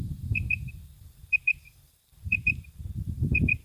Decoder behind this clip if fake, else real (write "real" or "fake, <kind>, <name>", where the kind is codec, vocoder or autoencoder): fake, vocoder, BigVGAN v2